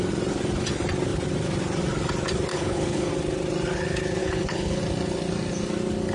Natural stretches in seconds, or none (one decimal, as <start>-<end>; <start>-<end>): 0.0-2.5; 3.1-4.2; 4.8-6.1